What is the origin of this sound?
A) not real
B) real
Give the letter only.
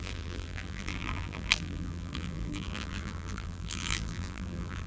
A